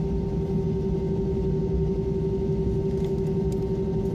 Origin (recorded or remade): recorded